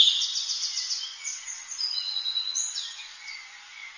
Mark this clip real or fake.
fake